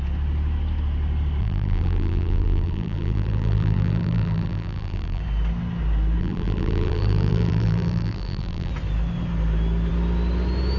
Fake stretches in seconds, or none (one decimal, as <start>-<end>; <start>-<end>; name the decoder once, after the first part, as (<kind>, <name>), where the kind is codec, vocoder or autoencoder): 1.4-5.2 (vocoder, BigVGAN v2); 6.2-8.7